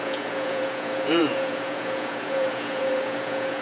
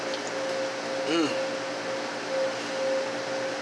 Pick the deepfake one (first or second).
first